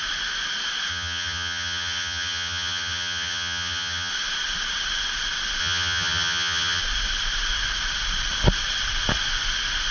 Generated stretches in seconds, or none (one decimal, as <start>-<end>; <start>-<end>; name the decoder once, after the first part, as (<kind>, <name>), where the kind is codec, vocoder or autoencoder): 0.9-4.1 (vocoder, HiFi-GAN); 5.6-6.8

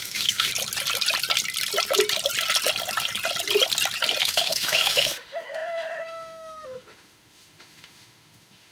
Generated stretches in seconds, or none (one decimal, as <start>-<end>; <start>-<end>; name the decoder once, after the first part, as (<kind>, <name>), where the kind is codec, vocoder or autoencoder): 0.0-0.5 (autoencoder, DAC-VAE); 4.2-8.7

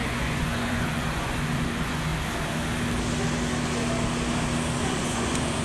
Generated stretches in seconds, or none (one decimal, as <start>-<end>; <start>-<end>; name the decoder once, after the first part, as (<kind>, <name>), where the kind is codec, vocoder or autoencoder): 0.0-2.1 (vocoder, Vocos); 4.8-5.6